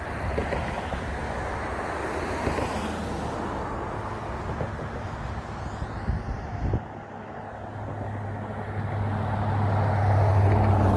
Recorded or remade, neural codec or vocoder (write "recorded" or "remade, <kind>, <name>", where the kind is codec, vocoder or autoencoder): recorded